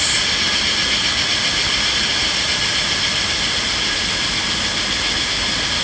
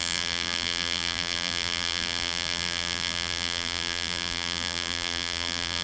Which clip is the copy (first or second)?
second